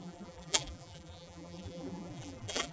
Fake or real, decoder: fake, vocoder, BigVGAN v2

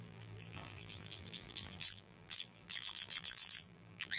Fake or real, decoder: fake, vocoder, BigVGAN v2